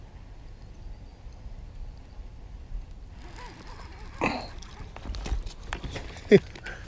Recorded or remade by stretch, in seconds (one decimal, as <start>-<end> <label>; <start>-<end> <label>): 0.0-1.1 recorded; 1.1-2.3 remade; 2.3-6.9 recorded